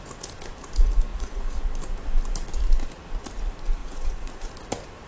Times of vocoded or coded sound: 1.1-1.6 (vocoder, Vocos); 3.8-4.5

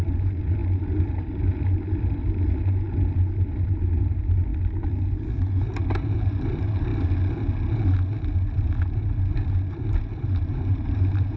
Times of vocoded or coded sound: 0.0-4.5 (vocoder, BigVGAN v2); 5.9-6.9; 10.0-11.4

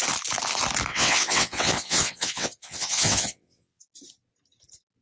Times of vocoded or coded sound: 0.9-3.8 (vocoder, WaveNeXt)

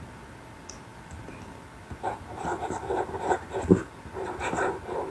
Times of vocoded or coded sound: none